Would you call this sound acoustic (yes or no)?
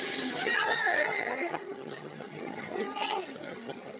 no